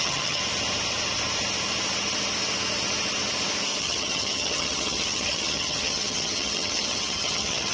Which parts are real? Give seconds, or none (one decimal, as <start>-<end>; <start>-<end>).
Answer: 0.4-3.8